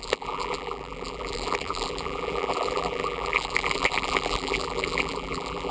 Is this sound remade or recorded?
remade